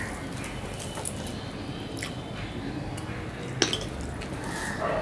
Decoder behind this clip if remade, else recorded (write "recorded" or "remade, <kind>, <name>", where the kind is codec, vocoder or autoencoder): recorded